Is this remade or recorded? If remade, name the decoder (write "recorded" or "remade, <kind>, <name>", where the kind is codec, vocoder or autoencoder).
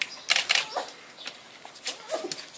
recorded